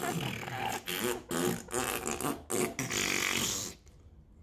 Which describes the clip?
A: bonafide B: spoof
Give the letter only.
A